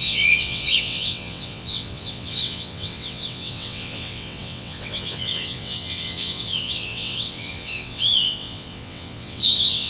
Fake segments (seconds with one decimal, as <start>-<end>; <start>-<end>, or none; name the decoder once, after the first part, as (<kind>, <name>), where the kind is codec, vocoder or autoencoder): 0.0-9.9 (vocoder, WaveNeXt)